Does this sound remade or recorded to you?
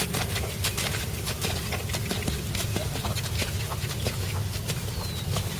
recorded